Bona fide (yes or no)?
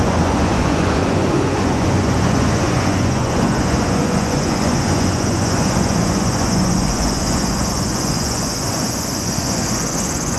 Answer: no